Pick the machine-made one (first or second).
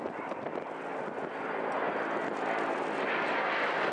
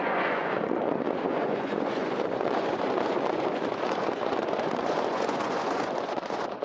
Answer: second